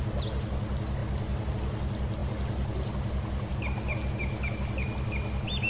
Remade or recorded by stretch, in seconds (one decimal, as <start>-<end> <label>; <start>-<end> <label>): 0.0-5.7 recorded

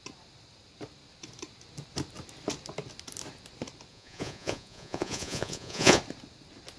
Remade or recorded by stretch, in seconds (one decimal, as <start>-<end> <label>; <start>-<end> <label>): 0.0-3.9 recorded; 3.9-6.0 remade; 6.0-6.8 recorded